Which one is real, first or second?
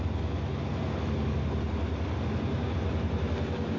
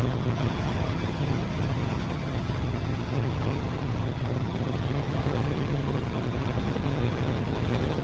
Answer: first